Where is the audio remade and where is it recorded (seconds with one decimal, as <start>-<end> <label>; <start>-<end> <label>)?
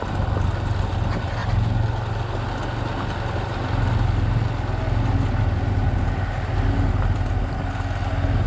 0.0-8.5 recorded